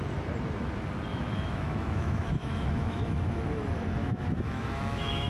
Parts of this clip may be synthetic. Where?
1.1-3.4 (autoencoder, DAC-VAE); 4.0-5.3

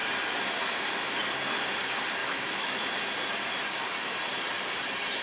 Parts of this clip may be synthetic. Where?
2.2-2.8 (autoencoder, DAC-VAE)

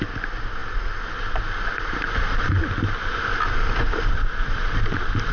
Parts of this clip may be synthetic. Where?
none

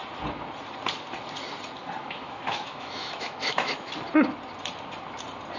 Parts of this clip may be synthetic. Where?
2.0-3.9 (autoencoder, DAC-VAE)

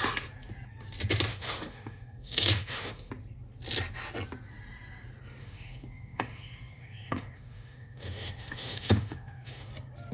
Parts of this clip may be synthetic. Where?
1.3-3.1 (autoencoder, DAC-VAE); 5.4-9.7

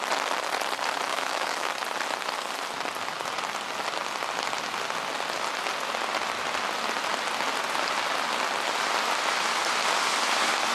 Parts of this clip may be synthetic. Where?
1.1-1.7 (autoencoder, DAC-VAE)

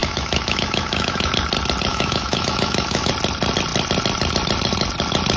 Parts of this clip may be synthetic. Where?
0.0-1.3 (autoencoder, DAC-VAE); 1.9-3.1

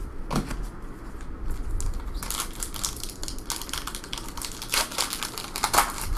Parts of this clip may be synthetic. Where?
none